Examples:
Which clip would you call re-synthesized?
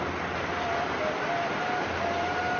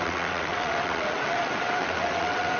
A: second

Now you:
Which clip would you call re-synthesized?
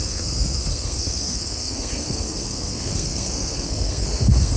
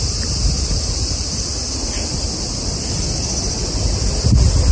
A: first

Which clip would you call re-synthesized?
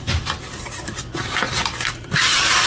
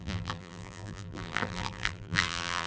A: second